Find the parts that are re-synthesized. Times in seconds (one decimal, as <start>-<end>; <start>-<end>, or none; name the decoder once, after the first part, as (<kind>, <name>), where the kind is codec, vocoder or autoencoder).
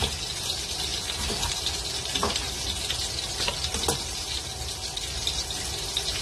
none